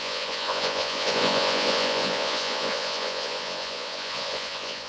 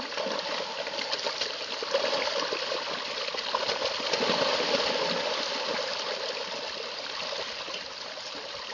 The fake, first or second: first